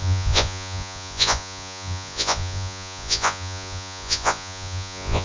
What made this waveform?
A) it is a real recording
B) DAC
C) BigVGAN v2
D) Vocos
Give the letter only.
D